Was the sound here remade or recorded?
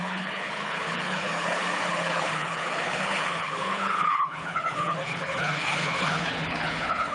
remade